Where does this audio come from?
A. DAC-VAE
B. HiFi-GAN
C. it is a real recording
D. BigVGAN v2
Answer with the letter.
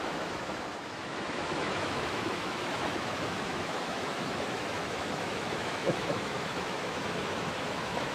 A